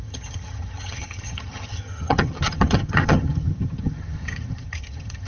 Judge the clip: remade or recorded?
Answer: remade